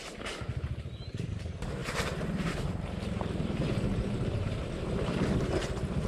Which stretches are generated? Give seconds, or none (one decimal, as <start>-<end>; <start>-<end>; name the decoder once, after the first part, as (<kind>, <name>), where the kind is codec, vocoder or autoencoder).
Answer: 0.0-1.8 (vocoder, BigVGAN v2); 2.5-6.1